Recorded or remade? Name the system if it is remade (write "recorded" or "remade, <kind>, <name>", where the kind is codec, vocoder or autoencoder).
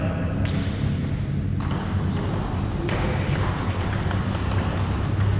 recorded